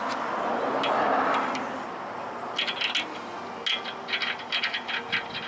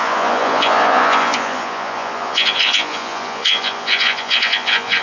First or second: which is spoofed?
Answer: second